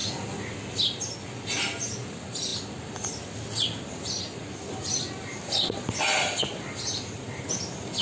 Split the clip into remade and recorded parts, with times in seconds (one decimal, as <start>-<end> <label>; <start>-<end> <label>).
0.0-8.0 recorded